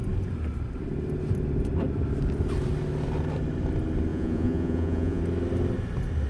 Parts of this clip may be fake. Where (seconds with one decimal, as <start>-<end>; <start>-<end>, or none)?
4.1-5.2